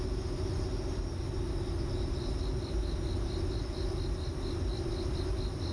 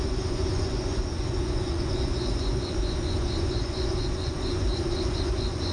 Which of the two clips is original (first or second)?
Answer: first